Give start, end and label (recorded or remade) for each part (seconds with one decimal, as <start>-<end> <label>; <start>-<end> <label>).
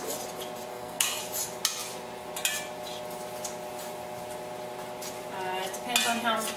0.0-0.7 recorded; 0.7-1.2 remade; 1.2-6.6 recorded